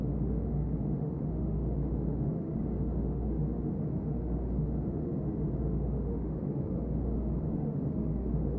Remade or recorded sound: remade